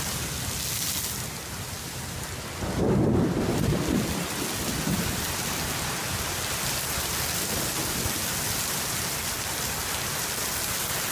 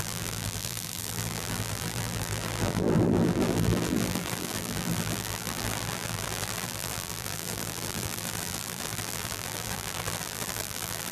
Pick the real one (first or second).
first